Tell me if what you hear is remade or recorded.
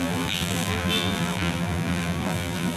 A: remade